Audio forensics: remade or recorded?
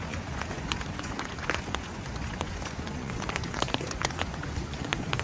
remade